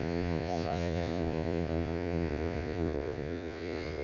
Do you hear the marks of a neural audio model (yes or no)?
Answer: yes